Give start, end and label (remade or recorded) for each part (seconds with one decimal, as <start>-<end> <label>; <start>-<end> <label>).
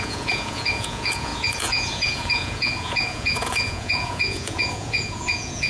0.0-5.7 remade